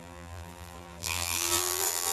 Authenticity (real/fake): fake